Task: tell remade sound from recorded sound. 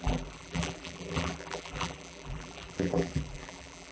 remade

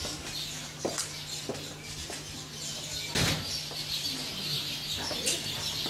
recorded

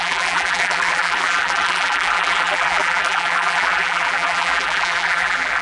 remade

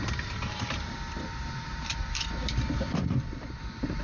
remade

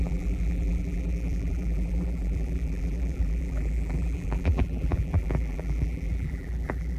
remade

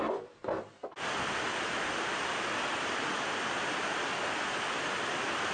recorded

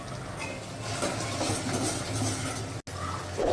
recorded